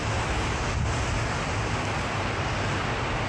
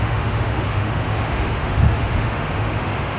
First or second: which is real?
first